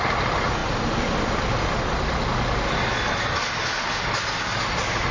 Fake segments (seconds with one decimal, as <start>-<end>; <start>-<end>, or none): none